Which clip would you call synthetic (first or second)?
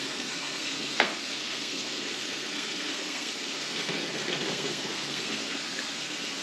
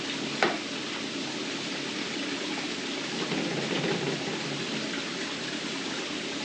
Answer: first